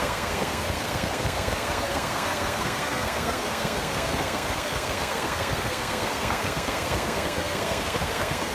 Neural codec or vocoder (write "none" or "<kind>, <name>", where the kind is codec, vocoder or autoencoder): codec, SNAC